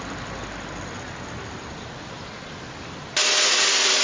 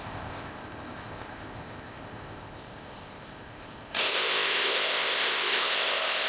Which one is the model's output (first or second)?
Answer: second